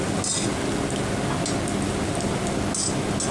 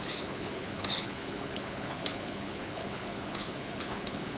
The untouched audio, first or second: first